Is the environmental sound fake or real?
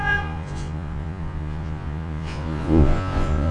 fake